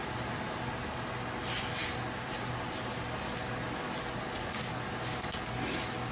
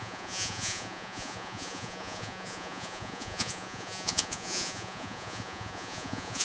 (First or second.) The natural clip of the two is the first